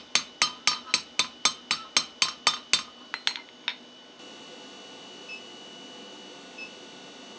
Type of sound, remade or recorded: recorded